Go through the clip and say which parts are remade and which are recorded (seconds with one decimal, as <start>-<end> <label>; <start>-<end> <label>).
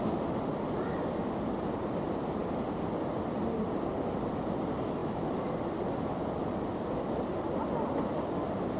0.0-8.8 recorded